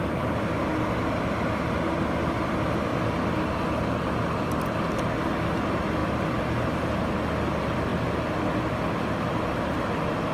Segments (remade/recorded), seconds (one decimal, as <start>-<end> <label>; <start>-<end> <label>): 0.0-0.6 remade; 0.6-10.3 recorded